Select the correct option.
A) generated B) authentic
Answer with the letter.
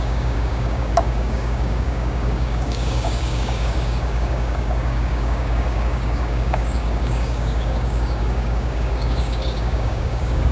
A